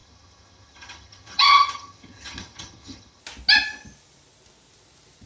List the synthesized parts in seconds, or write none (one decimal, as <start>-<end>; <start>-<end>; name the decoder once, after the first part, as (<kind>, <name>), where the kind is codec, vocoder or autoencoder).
0.0-3.2 (vocoder, HiFi-GAN)